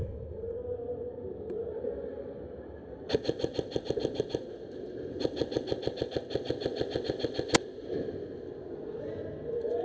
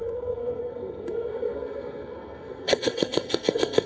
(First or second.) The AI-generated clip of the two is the second